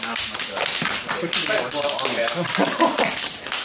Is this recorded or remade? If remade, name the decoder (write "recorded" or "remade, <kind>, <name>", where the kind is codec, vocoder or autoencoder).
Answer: recorded